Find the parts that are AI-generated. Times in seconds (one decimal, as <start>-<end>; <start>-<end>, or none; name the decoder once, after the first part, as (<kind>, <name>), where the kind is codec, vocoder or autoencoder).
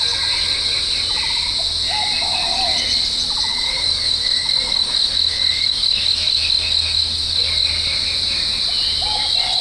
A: 3.5-7.4 (codec, DAC)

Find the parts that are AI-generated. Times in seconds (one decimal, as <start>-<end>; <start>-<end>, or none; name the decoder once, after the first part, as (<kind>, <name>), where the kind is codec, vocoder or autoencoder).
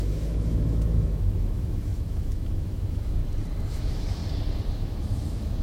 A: 0.0-3.2 (autoencoder, DAC-VAE); 3.7-4.2; 4.7-5.6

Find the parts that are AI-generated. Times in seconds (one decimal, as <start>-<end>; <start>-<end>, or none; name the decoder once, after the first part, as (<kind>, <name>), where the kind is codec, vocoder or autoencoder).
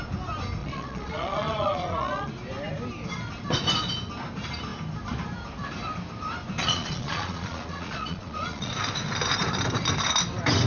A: 0.6-2.3 (vocoder, Vocos); 6.6-8.7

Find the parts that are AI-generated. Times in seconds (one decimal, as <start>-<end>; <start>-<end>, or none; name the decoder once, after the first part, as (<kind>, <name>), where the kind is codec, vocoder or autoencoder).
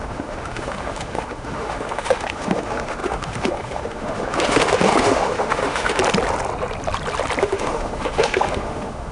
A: 0.0-6.0 (autoencoder, DAC-VAE); 7.4-9.1